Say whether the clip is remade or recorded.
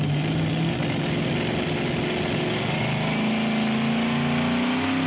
recorded